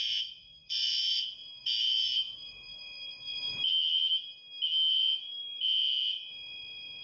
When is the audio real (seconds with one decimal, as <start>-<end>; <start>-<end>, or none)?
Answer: 3.6-4.9